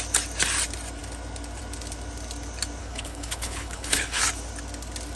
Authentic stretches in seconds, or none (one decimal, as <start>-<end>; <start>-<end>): 0.0-2.8; 4.2-5.2